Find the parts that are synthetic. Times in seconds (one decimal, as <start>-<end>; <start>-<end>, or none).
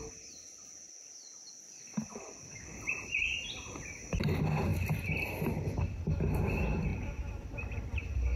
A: 6.9-8.4